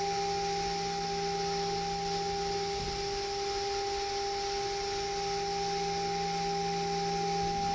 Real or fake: real